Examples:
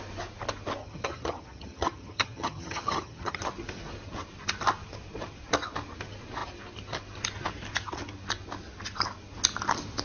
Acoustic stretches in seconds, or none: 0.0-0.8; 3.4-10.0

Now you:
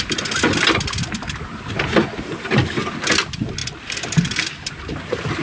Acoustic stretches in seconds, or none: 0.0-5.4